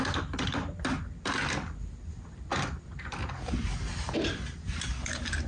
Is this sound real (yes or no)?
yes